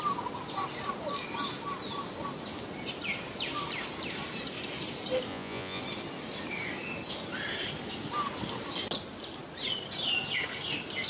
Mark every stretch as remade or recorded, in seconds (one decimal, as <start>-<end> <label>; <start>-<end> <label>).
0.0-5.3 recorded; 5.3-5.8 remade; 5.8-11.1 recorded